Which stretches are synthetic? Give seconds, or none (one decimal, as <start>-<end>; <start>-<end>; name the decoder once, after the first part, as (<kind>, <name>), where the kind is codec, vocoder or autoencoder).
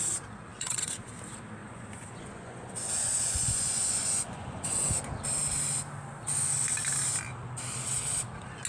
0.5-1.1 (vocoder, Vocos); 1.6-4.9